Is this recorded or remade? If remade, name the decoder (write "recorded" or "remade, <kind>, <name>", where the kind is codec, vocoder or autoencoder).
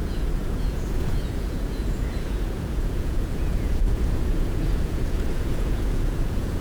remade, vocoder, Vocos